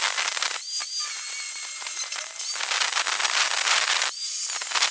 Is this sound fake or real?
real